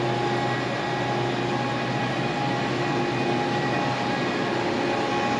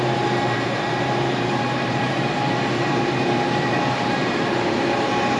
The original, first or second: first